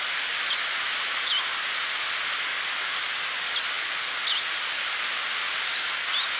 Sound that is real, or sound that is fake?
real